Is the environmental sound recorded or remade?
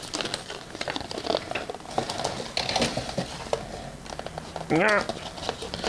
recorded